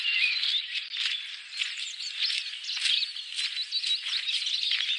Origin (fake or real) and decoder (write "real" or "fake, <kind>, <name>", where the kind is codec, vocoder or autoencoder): real